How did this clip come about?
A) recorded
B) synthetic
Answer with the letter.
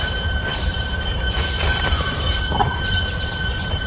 B